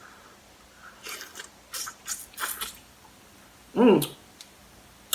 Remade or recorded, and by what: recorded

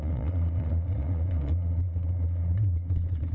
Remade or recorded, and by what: remade, vocoder, Vocos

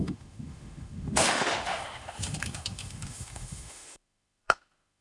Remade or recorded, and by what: remade, autoencoder, DAC-VAE